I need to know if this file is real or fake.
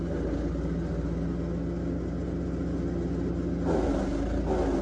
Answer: real